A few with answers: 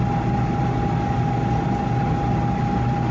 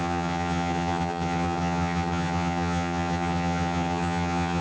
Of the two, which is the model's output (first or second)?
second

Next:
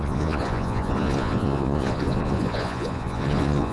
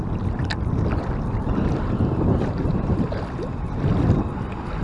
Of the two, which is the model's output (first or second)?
first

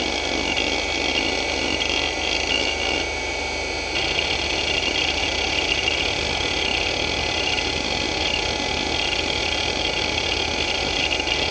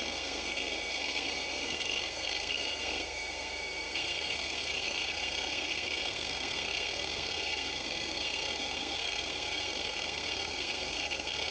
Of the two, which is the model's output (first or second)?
second